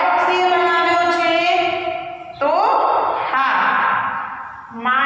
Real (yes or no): yes